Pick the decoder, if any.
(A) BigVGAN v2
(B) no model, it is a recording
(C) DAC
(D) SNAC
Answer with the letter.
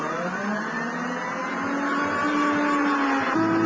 B